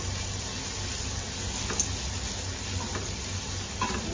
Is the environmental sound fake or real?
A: real